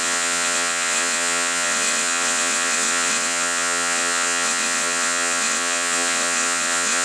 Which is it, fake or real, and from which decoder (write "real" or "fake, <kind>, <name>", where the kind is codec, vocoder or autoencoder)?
fake, vocoder, WaveNeXt